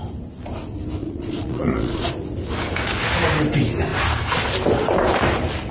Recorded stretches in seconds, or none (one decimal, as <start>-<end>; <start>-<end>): 0.0-1.0; 2.1-5.7